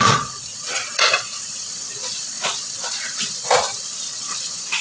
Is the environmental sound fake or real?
fake